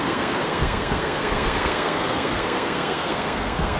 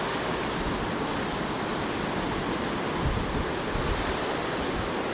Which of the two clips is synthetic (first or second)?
first